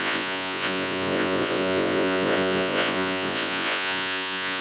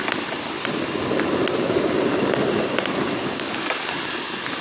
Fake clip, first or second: first